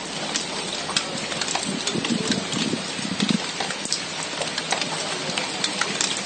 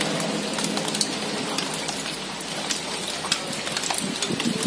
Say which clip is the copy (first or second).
first